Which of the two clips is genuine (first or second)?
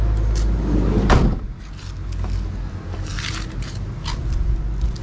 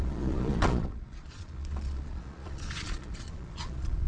first